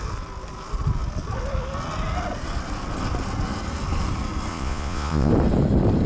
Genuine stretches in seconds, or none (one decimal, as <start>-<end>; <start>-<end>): 0.0-4.5; 5.3-6.1